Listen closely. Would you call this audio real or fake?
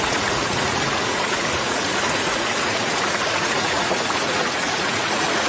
fake